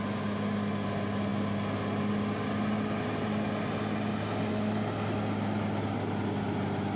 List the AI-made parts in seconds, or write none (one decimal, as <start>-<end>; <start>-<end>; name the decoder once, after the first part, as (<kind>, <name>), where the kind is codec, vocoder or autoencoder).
none